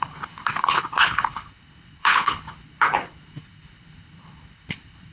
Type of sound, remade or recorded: remade